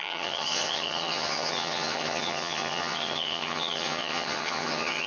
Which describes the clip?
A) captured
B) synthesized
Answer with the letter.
B